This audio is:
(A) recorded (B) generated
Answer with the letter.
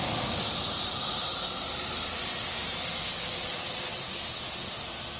A